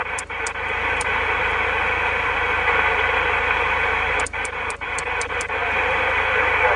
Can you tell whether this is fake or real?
fake